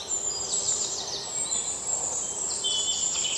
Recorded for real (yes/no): no